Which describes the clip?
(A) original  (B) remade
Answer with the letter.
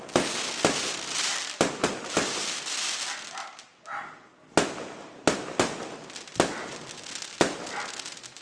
A